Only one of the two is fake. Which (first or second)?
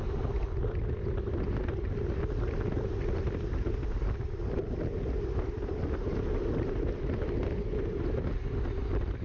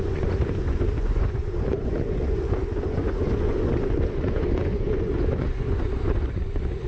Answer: second